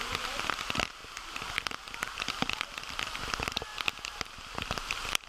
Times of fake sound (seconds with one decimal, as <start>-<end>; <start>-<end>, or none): 0.0-1.0; 2.5-3.7; 4.3-5.3